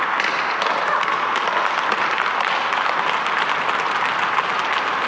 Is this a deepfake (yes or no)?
no